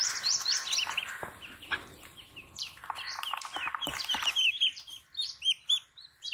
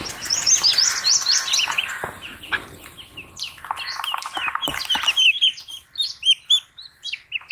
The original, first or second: second